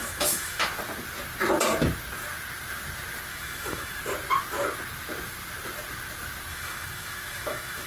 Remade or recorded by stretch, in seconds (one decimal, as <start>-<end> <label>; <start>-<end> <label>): 0.0-0.6 remade; 0.6-3.3 recorded; 3.3-4.0 remade; 4.0-6.5 recorded; 6.5-7.9 remade